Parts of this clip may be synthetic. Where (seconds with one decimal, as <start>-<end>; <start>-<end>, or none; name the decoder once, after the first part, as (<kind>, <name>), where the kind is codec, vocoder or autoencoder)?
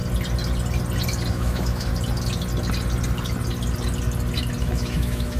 1.3-1.9 (autoencoder, DAC-VAE); 4.6-5.4